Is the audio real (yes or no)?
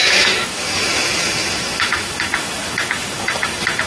no